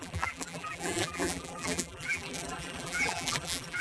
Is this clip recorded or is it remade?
remade